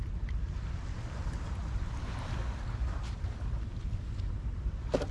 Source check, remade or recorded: recorded